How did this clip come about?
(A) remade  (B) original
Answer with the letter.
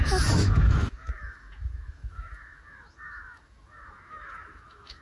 A